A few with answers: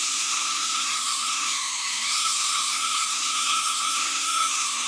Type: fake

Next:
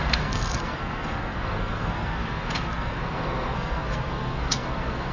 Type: fake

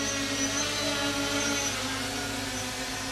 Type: real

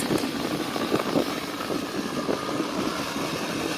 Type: real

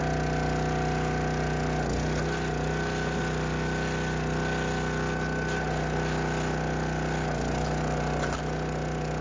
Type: real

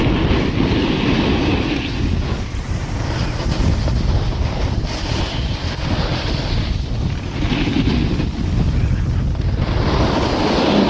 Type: real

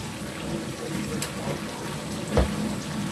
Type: real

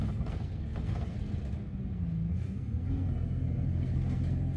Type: fake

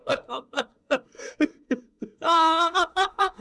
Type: fake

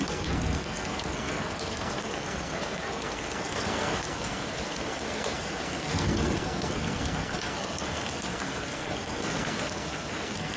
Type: fake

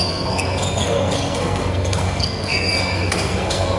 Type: fake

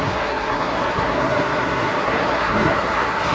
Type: fake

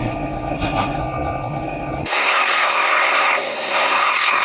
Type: fake